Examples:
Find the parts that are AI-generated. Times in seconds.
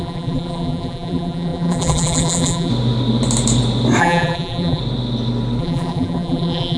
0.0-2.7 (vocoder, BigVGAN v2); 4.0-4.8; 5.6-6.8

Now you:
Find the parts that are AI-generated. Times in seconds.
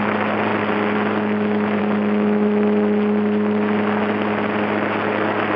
none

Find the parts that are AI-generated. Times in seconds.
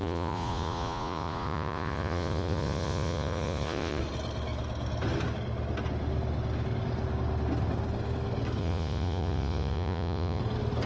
0.0-4.0 (vocoder, Vocos); 8.6-10.4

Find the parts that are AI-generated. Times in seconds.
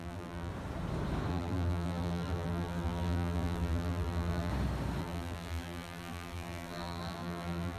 0.0-0.5 (vocoder, BigVGAN v2); 1.3-4.5; 5.0-7.8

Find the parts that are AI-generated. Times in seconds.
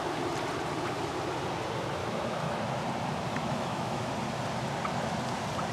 2.0-2.6 (autoencoder, DAC-VAE); 3.4-4.1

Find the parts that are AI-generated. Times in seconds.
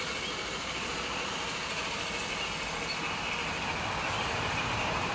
0.0-2.2 (vocoder, BigVGAN v2); 4.1-5.1